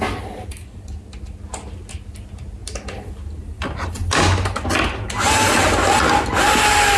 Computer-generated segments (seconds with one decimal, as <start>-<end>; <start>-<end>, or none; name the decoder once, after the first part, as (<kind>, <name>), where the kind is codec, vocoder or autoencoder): none